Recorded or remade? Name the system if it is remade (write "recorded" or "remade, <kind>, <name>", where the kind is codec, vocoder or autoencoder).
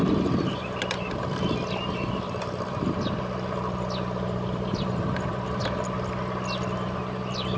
recorded